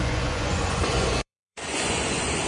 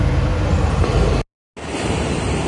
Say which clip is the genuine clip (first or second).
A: second